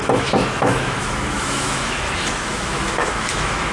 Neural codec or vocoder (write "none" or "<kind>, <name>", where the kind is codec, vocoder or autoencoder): autoencoder, DAC-VAE